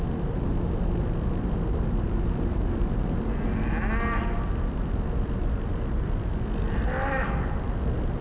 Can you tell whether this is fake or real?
real